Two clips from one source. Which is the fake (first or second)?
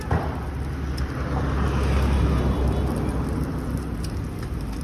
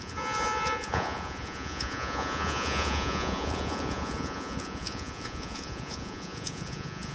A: second